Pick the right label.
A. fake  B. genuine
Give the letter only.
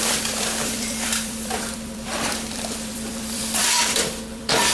A